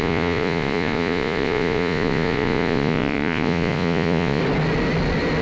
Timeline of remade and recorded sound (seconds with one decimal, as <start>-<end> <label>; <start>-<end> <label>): 0.0-4.4 remade; 4.4-5.4 recorded